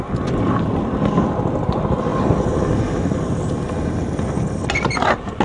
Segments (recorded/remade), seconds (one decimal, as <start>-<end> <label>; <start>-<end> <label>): 0.0-5.4 recorded